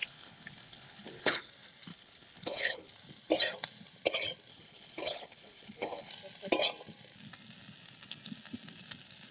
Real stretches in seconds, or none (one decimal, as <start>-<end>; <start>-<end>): 1.5-1.9; 2.9-4.5; 6.1-9.3